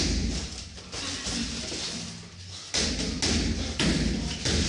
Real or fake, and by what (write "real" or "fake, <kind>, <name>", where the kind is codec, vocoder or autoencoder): real